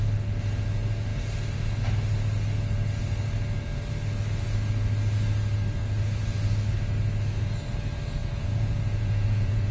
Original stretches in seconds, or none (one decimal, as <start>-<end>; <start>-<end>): 0.0-8.2